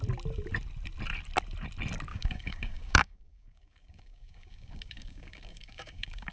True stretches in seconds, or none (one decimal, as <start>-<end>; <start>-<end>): 0.0-2.1